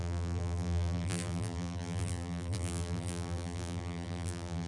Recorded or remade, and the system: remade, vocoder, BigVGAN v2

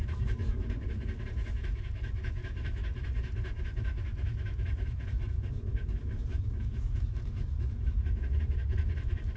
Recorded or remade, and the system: remade, autoencoder, DAC-VAE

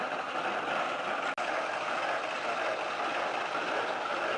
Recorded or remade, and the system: recorded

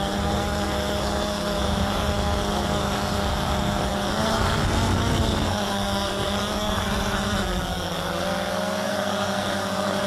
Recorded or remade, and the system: remade, codec, SNAC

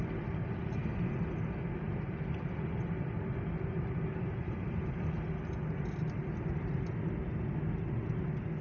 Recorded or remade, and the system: recorded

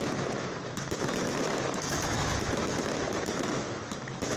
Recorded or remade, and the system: remade, autoencoder, DAC-VAE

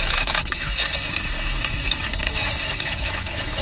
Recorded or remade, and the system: remade, autoencoder, DAC-VAE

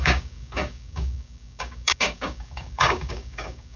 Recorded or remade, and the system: remade, codec, DAC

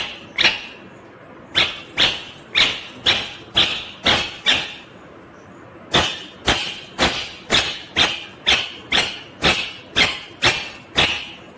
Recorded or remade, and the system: recorded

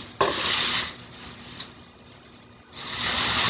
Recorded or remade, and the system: recorded